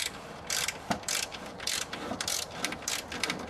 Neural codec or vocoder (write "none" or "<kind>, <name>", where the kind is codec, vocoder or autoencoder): vocoder, BigVGAN v2